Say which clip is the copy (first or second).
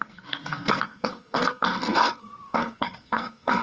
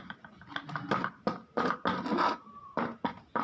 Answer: first